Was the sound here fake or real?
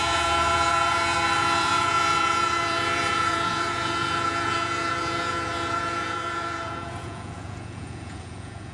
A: fake